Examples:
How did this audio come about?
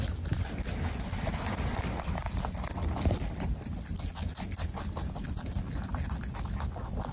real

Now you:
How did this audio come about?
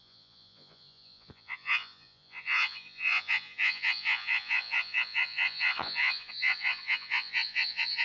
fake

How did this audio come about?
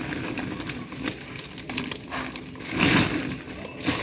real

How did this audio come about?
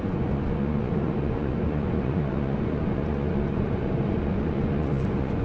fake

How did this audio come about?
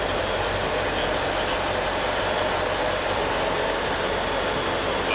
real